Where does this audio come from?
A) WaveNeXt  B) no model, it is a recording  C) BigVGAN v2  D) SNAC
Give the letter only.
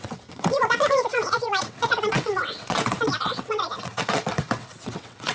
A